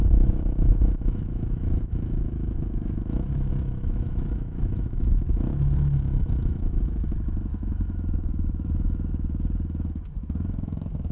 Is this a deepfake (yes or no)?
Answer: yes